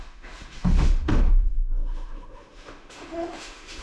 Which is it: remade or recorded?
remade